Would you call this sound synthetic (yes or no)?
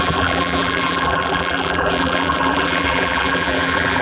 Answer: yes